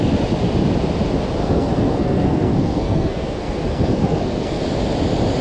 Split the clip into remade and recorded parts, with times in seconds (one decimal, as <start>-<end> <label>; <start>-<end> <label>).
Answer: 0.0-1.4 recorded; 1.4-4.6 remade; 4.6-5.4 recorded